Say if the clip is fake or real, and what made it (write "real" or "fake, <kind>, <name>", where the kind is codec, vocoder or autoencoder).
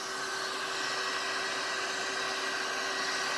real